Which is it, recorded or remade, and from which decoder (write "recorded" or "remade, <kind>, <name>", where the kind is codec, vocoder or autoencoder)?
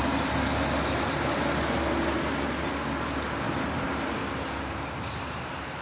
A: recorded